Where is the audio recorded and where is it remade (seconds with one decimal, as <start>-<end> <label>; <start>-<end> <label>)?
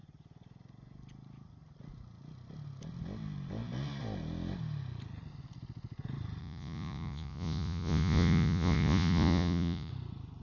0.0-6.4 recorded; 6.4-9.9 remade; 9.9-10.4 recorded